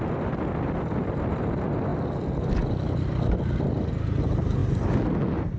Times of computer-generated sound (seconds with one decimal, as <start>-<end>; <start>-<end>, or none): none